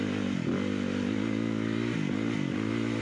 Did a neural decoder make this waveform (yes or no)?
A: no